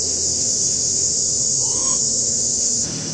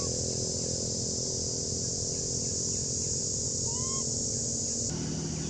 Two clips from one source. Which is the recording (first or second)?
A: second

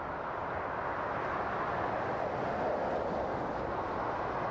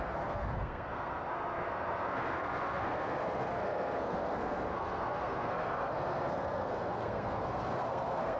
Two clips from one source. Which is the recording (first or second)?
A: first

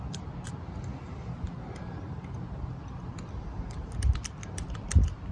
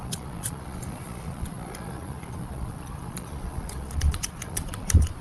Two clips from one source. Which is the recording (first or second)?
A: first